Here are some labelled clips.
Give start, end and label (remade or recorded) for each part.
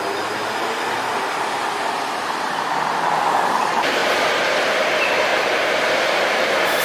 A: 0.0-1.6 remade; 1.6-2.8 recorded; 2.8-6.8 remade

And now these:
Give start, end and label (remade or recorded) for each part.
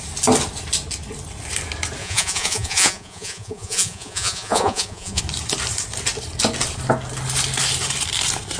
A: 0.0-2.0 recorded; 2.0-5.2 remade; 5.2-8.6 recorded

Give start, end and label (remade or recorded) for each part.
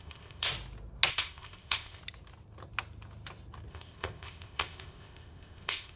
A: 0.0-0.5 remade; 0.5-1.1 recorded; 1.1-2.0 remade; 2.0-3.7 recorded; 3.7-6.0 remade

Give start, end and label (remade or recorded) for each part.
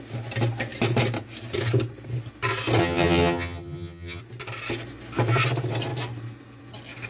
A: 0.0-2.8 recorded; 2.8-4.2 remade; 4.2-7.1 recorded